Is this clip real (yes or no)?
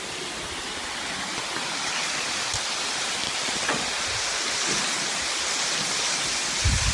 yes